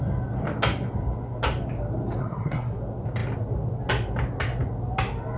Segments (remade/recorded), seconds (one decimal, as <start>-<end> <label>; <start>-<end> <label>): 0.0-2.2 recorded; 2.2-2.8 remade; 2.8-5.4 recorded